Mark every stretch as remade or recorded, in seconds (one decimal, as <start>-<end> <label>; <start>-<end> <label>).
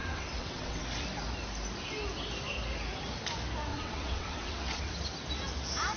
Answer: 0.0-0.8 remade; 0.8-3.7 recorded; 3.7-4.9 remade; 4.9-6.0 recorded